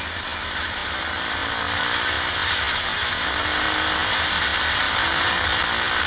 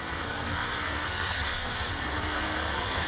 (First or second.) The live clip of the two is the first